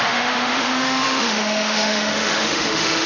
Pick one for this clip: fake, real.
fake